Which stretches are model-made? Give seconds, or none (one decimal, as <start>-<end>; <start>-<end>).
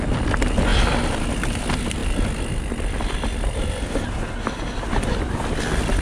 none